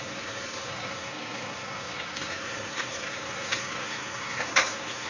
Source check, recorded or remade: remade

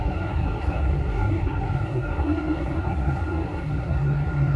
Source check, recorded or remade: remade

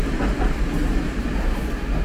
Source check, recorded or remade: recorded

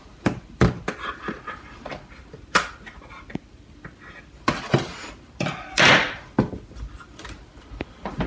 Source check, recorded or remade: recorded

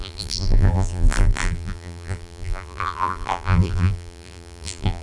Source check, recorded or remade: remade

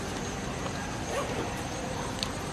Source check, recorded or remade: remade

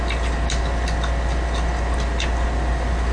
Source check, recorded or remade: recorded